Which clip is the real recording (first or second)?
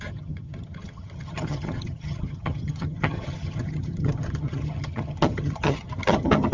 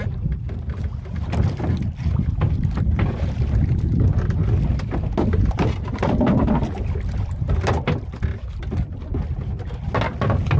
second